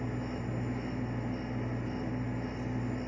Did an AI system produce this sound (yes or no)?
no